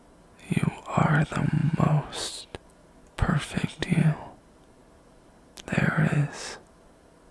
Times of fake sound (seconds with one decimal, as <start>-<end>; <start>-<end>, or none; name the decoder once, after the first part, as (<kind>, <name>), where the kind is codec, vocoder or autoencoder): none